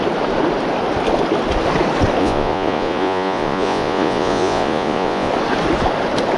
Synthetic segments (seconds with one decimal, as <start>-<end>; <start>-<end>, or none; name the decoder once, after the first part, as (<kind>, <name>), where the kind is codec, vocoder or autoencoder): 2.2-5.3 (vocoder, Vocos)